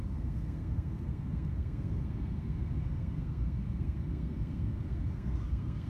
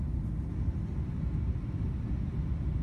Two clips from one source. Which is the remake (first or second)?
first